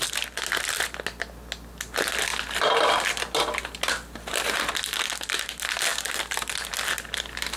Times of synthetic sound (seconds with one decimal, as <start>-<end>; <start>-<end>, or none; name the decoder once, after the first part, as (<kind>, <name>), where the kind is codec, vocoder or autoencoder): 2.3-3.6 (vocoder, BigVGAN v2)